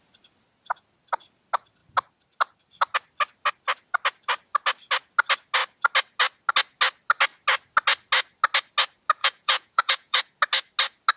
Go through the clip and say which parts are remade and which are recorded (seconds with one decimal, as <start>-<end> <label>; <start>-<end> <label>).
0.0-9.2 recorded; 9.2-10.2 remade; 10.2-11.2 recorded